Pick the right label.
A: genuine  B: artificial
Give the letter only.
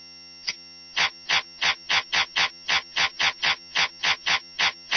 B